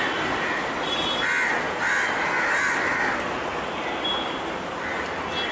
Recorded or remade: recorded